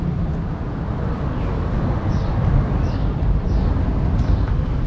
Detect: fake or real real